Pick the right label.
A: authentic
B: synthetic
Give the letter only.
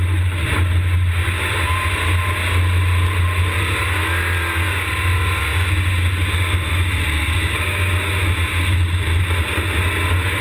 A